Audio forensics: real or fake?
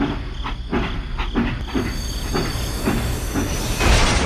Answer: real